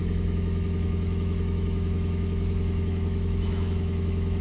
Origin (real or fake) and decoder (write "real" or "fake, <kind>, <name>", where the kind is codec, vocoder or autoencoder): fake, autoencoder, DAC-VAE